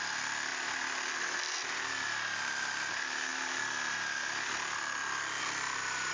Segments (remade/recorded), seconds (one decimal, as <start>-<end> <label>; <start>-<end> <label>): 0.0-6.1 recorded